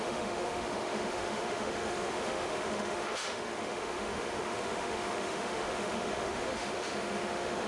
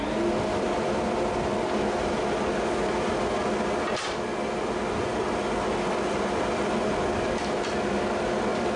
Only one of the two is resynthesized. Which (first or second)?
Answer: first